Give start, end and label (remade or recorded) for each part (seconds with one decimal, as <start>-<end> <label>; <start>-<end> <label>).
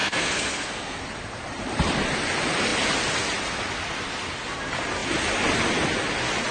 0.0-1.0 remade; 1.0-6.5 recorded